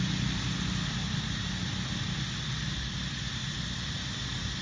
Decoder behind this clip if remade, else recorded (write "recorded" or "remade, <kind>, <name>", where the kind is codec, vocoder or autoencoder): recorded